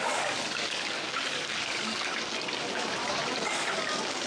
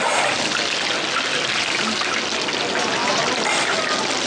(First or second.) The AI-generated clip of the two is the first